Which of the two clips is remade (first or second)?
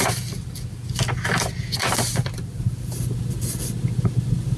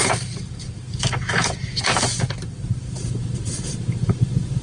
second